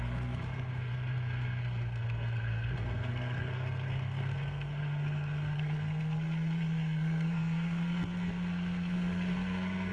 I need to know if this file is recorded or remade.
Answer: remade